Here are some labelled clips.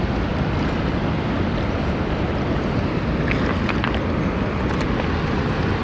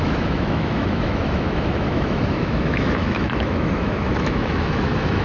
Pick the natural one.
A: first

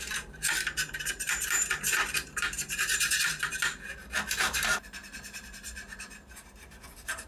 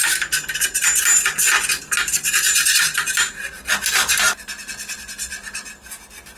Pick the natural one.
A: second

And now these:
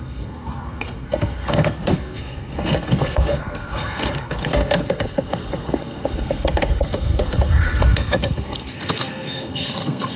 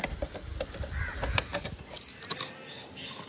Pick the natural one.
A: second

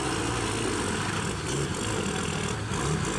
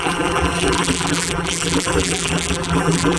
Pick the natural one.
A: first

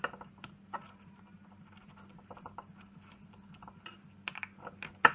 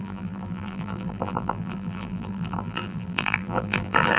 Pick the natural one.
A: first